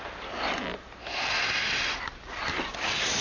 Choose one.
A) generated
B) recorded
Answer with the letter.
B